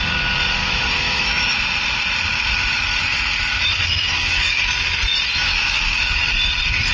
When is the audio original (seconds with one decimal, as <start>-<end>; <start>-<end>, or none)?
0.0-0.6; 1.6-2.3; 4.7-5.4; 6.3-6.9